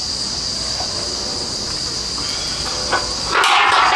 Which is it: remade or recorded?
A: recorded